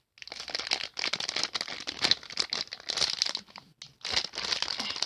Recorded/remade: recorded